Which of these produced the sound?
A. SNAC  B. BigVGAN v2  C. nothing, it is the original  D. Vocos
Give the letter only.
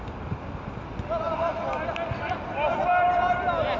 C